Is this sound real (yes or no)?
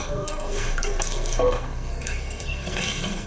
no